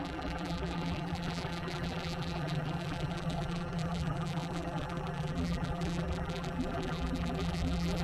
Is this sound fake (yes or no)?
yes